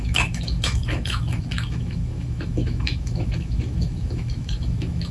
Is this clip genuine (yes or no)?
no